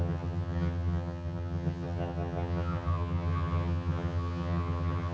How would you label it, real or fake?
fake